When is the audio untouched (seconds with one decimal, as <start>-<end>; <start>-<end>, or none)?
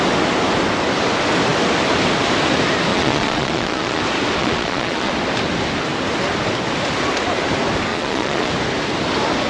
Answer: 0.0-2.9; 4.0-4.4; 5.1-7.9; 8.5-9.5